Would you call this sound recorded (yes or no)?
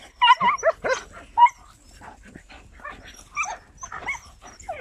yes